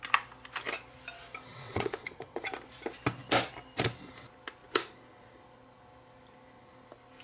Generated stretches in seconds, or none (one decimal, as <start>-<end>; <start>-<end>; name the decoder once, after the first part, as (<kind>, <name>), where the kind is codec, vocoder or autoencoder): 1.5-2.5 (vocoder, WaveNeXt)